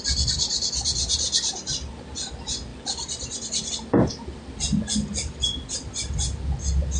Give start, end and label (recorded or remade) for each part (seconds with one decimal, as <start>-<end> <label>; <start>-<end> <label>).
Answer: 0.0-7.0 recorded